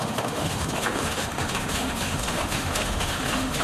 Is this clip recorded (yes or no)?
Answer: no